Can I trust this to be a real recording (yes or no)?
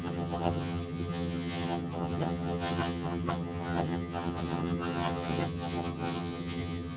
no